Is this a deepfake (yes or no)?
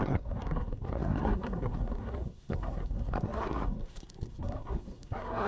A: yes